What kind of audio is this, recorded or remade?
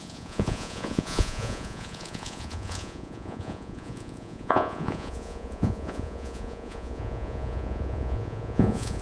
remade